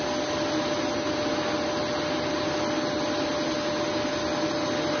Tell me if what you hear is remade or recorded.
recorded